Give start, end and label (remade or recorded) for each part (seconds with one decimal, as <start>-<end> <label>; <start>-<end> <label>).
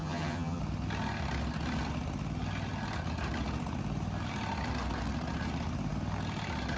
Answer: 0.0-0.6 remade; 0.6-6.8 recorded